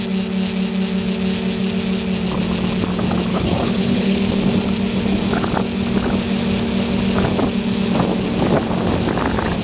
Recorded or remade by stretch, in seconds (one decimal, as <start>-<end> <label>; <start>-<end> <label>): 0.0-3.3 recorded; 3.3-4.2 remade; 4.2-9.6 recorded